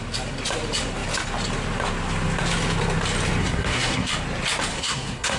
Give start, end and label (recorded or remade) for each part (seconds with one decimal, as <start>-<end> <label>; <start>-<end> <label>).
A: 0.0-3.4 recorded; 3.4-4.1 remade; 4.1-4.7 recorded; 4.7-5.4 remade